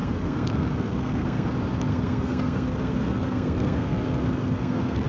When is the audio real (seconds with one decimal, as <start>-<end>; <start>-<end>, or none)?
1.5-1.9